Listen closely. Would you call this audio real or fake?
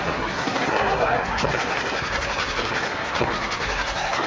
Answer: fake